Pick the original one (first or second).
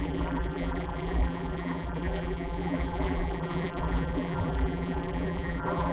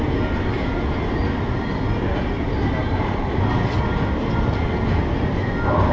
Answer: second